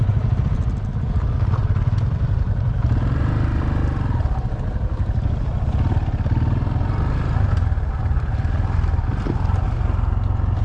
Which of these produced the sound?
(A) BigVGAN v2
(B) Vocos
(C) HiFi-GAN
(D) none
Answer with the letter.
D